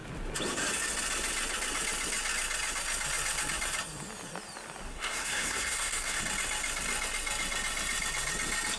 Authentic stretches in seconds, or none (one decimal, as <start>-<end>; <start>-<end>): 0.0-4.9; 6.2-8.8